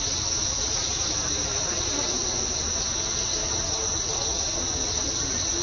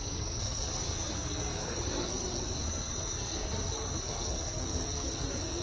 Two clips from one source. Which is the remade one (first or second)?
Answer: second